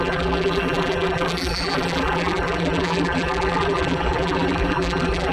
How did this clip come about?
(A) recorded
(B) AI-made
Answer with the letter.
B